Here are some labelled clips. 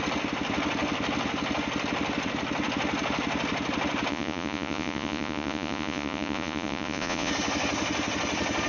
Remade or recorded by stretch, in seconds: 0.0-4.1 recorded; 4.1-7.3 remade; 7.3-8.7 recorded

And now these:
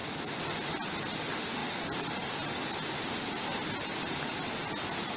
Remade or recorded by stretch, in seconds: 0.0-5.2 recorded

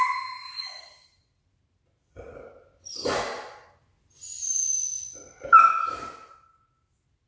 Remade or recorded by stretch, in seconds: 0.0-7.3 recorded